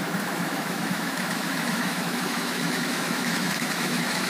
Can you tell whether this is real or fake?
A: fake